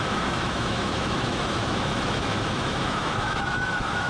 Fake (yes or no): yes